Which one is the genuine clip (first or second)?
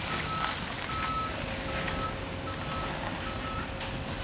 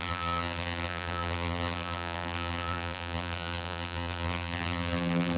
first